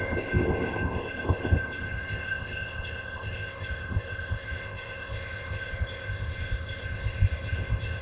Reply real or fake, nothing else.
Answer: fake